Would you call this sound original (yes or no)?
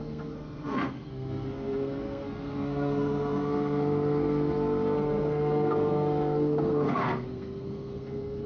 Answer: no